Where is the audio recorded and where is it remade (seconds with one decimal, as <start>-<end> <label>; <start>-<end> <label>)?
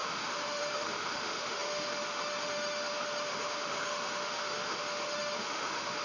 0.0-6.0 remade